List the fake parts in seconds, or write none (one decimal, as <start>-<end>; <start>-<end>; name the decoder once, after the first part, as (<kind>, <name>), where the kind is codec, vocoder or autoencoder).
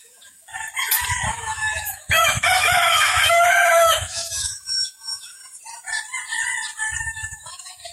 0.0-0.5 (autoencoder, DAC-VAE); 1.3-5.4; 7.0-7.9